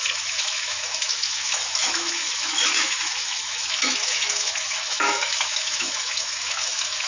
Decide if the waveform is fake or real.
fake